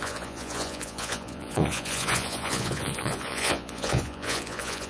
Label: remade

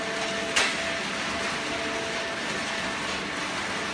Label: recorded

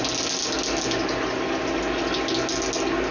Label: recorded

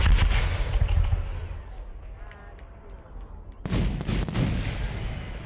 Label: recorded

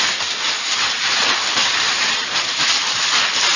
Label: remade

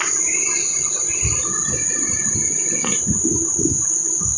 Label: recorded